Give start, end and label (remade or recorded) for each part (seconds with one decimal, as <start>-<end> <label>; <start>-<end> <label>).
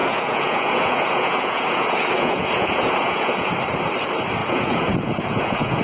0.0-3.5 remade; 3.5-4.4 recorded; 4.4-5.8 remade